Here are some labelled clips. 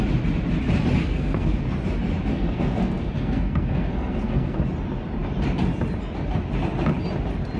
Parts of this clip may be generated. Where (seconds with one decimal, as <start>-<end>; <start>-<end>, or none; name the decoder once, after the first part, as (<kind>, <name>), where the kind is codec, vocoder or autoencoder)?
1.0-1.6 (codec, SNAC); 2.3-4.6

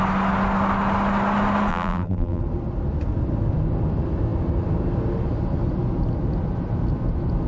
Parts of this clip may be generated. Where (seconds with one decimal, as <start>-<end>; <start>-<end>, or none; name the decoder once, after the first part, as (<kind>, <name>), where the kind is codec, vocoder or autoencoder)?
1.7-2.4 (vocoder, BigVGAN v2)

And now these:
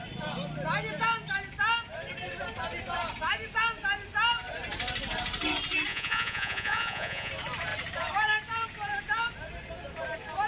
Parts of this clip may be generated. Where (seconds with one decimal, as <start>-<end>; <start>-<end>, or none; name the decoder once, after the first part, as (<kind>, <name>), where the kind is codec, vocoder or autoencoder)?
5.9-7.3 (vocoder, Vocos)

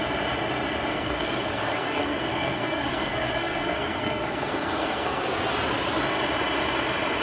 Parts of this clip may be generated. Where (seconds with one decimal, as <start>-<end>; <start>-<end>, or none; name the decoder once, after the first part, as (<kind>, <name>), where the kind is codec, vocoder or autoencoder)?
0.9-5.2 (codec, SNAC)

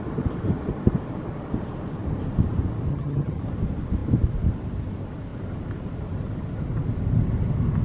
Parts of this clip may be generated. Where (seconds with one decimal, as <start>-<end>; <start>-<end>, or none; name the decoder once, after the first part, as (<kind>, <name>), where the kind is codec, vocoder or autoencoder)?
2.9-3.4 (vocoder, HiFi-GAN)